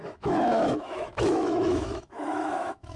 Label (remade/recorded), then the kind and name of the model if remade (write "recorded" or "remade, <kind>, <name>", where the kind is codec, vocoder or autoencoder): remade, autoencoder, DAC-VAE